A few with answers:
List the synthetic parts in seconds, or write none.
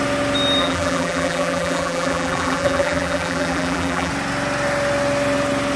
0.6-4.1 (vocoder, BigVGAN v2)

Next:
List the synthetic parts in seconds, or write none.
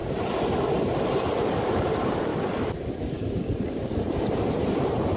0.8-2.3 (vocoder, BigVGAN v2); 3.0-5.2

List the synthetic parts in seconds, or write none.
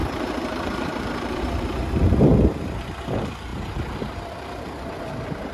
0.0-2.3 (vocoder, BigVGAN v2); 2.8-5.5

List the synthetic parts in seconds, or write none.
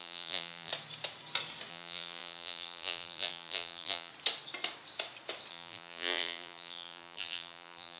0.0-0.7 (vocoder, BigVGAN v2); 1.7-4.1; 5.5-8.0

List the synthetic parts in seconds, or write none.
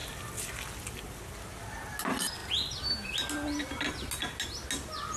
0.0-0.6 (vocoder, BigVGAN v2)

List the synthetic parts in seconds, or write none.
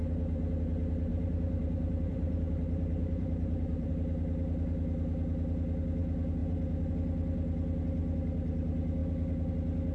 1.1-3.9 (vocoder, BigVGAN v2)